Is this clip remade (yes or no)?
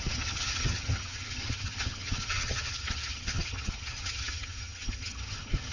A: yes